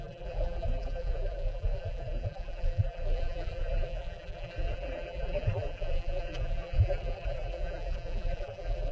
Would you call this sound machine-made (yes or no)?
yes